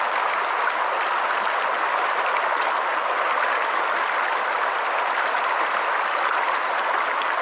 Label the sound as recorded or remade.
recorded